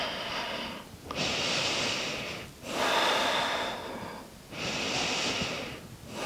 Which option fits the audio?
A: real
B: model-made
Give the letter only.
A